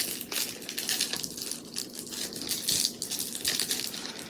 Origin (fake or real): real